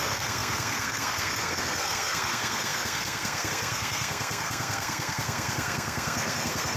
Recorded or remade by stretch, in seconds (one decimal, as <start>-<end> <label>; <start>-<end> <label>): 0.0-6.8 remade